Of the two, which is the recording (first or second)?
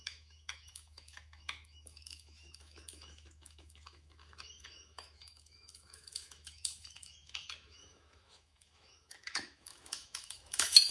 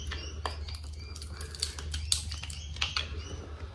second